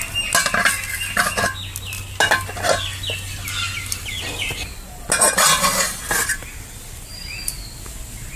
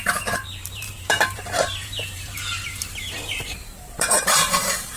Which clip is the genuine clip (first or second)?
first